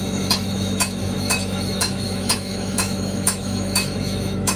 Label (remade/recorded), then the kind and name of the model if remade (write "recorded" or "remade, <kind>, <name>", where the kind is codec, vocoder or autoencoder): remade, autoencoder, DAC-VAE